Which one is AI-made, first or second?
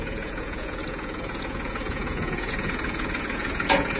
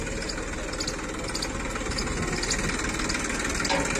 first